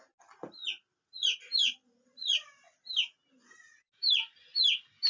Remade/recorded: recorded